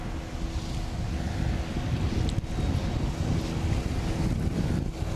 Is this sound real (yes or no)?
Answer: yes